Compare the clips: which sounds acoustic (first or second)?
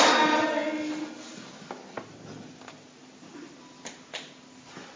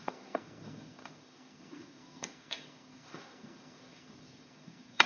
first